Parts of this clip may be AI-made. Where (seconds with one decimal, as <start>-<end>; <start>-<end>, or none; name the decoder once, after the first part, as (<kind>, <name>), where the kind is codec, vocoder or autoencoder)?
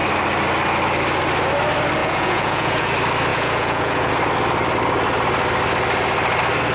2.0-2.9 (vocoder, Vocos); 3.3-4.1